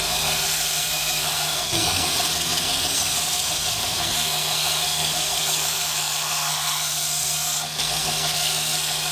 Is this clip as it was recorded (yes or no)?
no